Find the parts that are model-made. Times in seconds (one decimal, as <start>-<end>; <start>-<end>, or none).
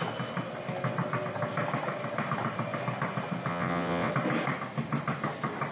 3.5-4.1